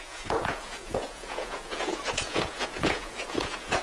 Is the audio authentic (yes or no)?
no